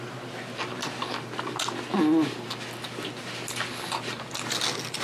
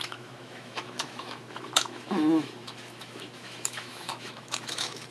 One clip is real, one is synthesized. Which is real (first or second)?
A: first